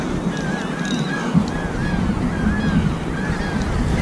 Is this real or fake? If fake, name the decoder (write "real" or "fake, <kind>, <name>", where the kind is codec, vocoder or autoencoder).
real